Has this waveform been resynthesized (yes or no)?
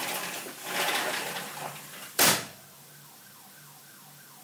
yes